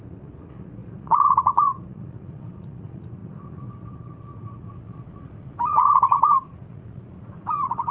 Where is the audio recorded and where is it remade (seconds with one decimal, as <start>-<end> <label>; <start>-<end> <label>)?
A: 0.0-7.9 remade